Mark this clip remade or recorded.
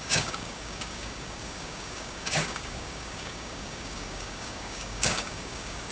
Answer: remade